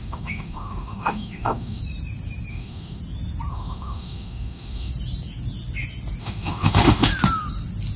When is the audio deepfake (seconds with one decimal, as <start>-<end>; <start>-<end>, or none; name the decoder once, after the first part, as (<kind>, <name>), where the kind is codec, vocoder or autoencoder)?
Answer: 0.0-1.8 (autoencoder, DAC-VAE); 2.5-3.0; 3.5-4.9; 6.2-7.1